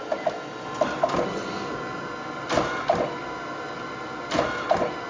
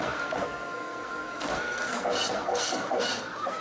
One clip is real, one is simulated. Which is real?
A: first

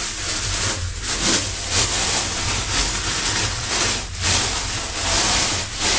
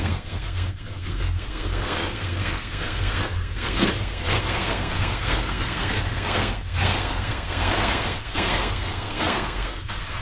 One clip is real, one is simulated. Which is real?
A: first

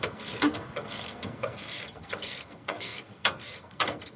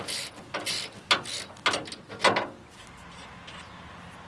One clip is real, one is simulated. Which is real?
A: second